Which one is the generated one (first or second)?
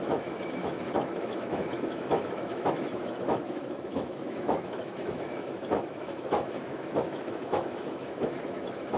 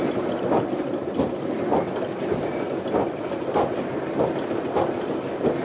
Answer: first